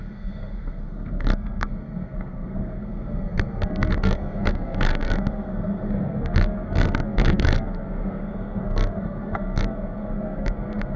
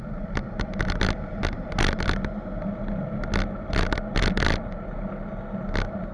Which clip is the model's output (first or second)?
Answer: first